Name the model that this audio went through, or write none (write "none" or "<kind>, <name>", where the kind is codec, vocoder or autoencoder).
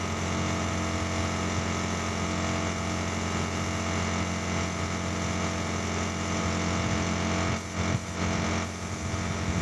none